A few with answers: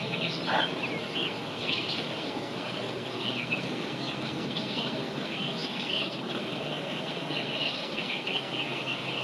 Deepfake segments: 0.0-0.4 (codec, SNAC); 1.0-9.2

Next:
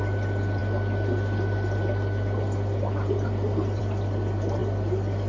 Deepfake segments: none

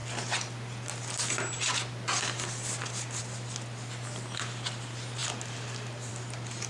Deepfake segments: none

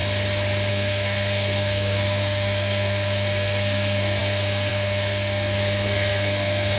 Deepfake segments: 0.7-6.8 (codec, SNAC)

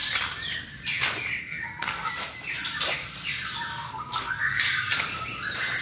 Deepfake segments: 1.4-2.1 (codec, SNAC); 3.7-4.6